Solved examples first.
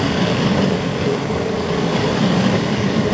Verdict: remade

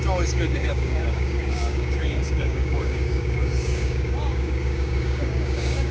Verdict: remade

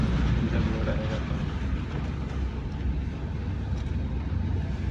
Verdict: recorded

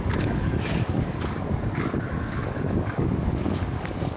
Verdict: remade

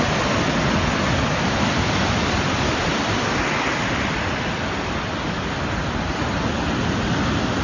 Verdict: recorded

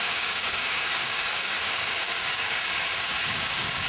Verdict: remade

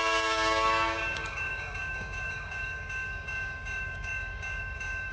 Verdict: remade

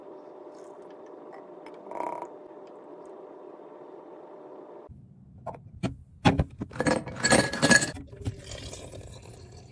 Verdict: recorded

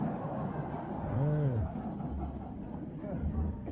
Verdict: recorded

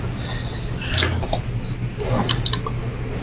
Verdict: recorded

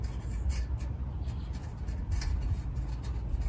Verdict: recorded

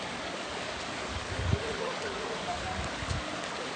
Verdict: remade